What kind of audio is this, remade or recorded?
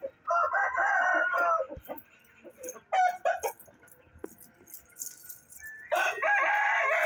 recorded